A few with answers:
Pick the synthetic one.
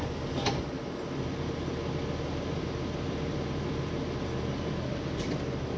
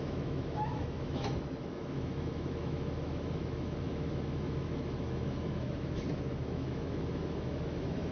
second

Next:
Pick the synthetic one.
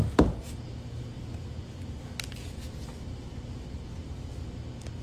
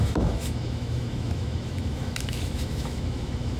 second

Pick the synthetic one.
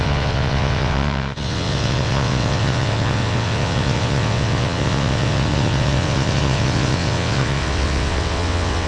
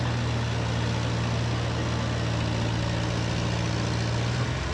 first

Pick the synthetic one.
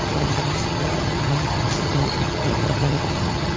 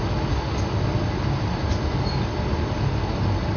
first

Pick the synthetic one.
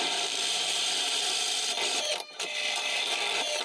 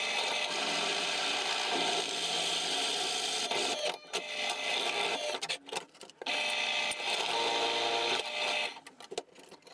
first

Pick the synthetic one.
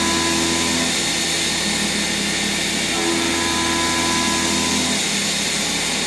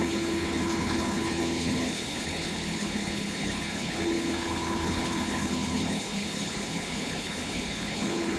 second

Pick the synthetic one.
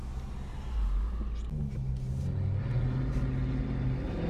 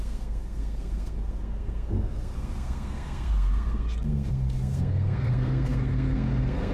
second